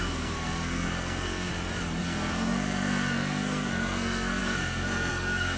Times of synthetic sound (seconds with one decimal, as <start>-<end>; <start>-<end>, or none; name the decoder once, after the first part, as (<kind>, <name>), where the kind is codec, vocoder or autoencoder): 0.0-1.5 (codec, SNAC); 2.0-5.6